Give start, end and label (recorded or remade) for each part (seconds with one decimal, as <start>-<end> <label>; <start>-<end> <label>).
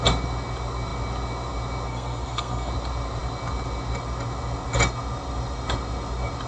0.0-1.9 recorded; 1.9-2.7 remade; 2.7-6.5 recorded